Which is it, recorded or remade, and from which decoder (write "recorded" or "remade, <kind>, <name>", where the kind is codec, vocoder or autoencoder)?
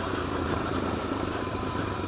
remade, vocoder, BigVGAN v2